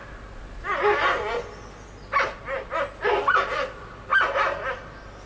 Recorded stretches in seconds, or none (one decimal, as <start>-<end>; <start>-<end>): 0.0-5.3